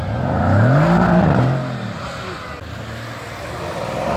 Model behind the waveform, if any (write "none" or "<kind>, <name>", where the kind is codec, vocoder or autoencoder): none